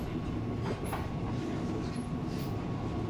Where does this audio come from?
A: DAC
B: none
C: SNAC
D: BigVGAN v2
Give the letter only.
B